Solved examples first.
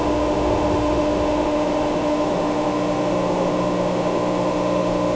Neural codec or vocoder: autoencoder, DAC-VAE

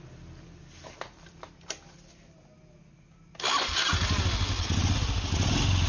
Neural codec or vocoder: none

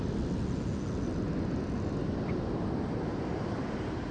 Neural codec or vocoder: none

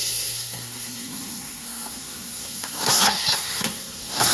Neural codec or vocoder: codec, SNAC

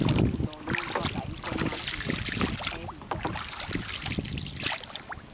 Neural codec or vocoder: none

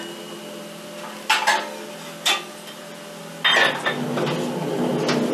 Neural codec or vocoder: none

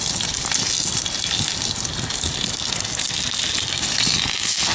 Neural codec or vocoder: none